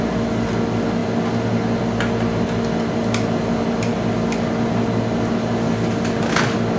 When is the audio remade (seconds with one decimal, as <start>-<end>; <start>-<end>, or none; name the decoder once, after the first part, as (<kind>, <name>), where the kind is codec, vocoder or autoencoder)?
none